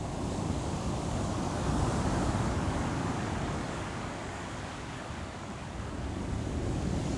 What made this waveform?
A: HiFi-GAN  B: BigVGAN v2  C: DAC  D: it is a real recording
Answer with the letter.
C